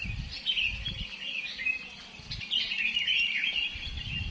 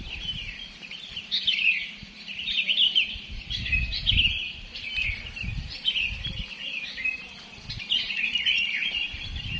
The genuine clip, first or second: first